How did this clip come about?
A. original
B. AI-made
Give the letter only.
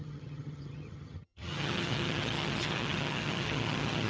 B